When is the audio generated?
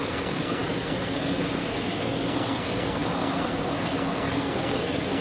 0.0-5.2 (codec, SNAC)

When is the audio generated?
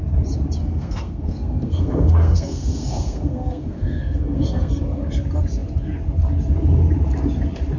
0.6-4.7 (codec, SNAC)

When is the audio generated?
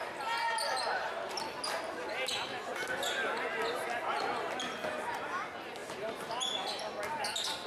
none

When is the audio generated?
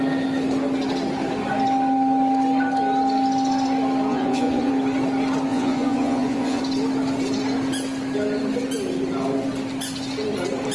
4.1-4.7 (vocoder, Vocos); 5.5-6.6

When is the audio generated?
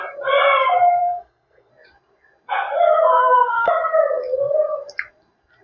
1.0-1.7 (codec, SNAC); 3.1-3.7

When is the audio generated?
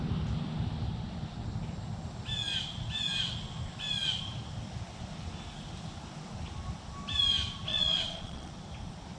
7.7-8.5 (vocoder, Vocos)